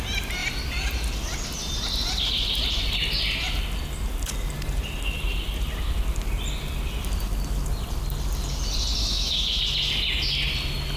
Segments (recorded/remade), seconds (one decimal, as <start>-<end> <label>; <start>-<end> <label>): 0.0-9.0 recorded; 9.0-9.6 remade; 9.6-11.0 recorded